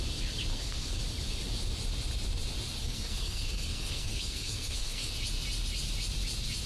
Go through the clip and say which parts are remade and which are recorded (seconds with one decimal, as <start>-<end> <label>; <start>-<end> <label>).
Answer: 0.0-0.5 recorded; 0.5-1.0 remade; 1.0-2.8 recorded; 2.8-5.1 remade; 5.1-6.7 recorded